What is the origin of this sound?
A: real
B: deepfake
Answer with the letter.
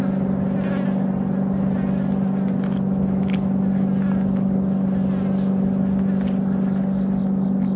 A